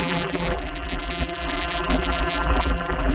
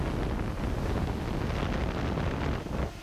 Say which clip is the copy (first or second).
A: first